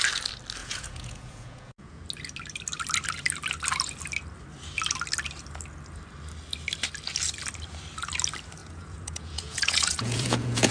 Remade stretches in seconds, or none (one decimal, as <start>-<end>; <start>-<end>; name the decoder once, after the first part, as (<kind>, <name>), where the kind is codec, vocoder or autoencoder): 0.6-2.0 (vocoder, Vocos); 8.6-10.7